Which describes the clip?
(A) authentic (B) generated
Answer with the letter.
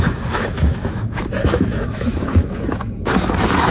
B